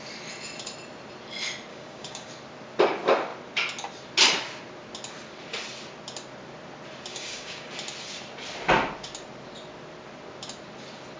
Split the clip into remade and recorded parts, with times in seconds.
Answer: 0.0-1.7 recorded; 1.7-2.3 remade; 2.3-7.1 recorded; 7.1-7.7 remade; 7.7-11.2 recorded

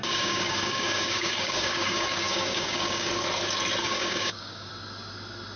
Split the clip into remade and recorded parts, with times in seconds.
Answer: 0.0-3.1 remade; 3.1-3.8 recorded; 3.8-4.7 remade; 4.7-5.6 recorded